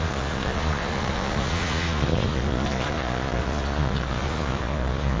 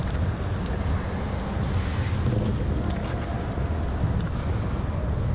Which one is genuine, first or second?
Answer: second